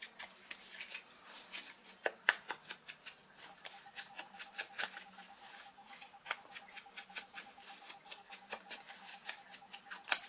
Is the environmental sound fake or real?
real